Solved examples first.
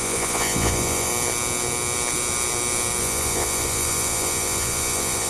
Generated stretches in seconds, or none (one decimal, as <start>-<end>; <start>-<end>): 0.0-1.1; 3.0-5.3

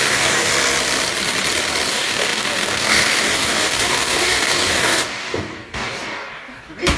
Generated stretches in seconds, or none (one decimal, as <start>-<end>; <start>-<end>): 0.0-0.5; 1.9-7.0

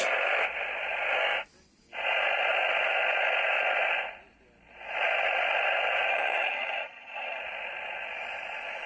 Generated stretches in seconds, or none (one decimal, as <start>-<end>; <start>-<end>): 6.1-7.4